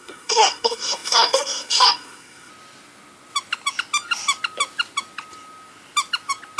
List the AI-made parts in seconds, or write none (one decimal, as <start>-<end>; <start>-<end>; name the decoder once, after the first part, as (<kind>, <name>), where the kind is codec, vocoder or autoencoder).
0.0-2.5 (codec, SNAC)